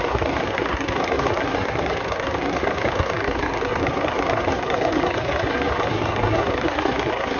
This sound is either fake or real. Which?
fake